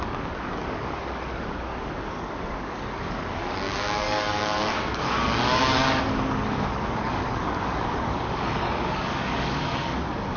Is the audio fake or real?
fake